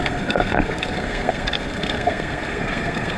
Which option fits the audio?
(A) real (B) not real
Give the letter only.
B